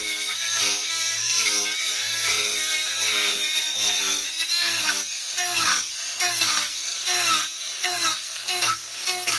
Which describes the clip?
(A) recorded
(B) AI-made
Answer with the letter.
B